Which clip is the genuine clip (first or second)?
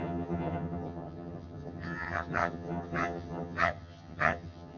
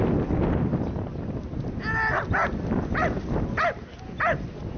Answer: second